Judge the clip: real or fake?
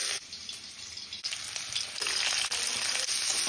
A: real